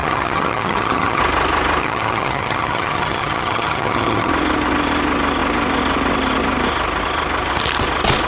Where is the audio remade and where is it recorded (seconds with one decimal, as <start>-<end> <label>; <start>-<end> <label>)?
0.0-1.2 remade; 1.2-1.8 recorded; 1.8-4.3 remade; 4.3-8.3 recorded